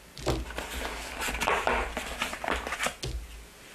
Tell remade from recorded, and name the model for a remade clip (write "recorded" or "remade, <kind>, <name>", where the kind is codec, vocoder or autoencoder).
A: recorded